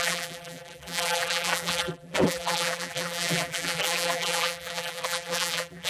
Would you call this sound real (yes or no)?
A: no